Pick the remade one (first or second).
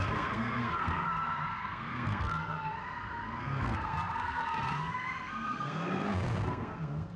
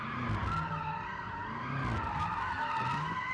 first